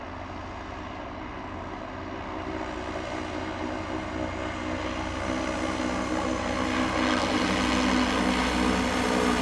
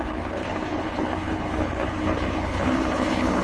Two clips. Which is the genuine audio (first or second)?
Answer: first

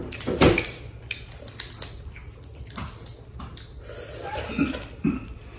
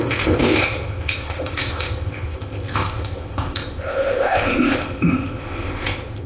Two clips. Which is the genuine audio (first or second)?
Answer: first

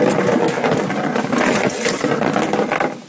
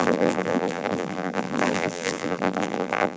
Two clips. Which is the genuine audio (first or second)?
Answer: first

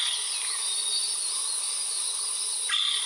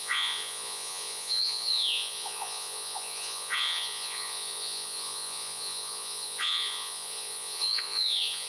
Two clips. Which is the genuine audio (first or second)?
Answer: first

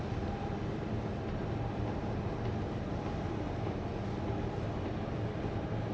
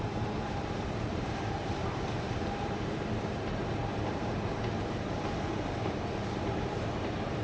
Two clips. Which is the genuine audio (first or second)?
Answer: first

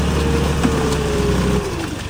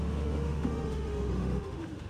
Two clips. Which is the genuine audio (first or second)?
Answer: first